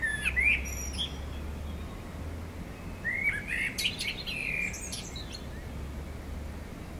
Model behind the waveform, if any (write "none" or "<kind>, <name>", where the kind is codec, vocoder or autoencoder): none